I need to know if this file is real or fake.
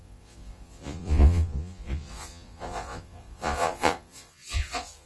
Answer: fake